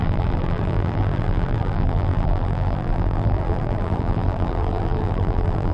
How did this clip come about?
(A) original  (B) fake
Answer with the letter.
B